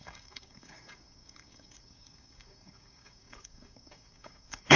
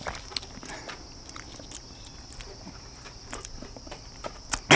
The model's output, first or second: first